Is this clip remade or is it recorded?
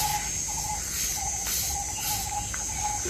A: recorded